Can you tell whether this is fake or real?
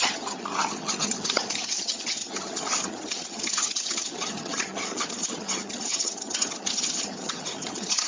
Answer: fake